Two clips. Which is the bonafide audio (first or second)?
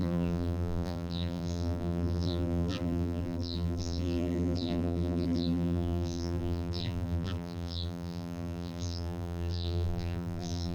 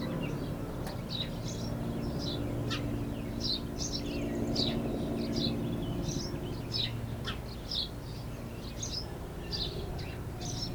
second